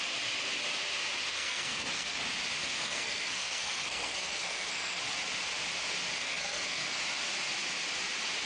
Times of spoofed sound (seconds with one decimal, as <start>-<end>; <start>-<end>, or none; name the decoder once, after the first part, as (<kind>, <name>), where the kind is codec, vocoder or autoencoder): 1.3-2.2 (codec, SNAC); 2.6-5.0; 6.2-7.0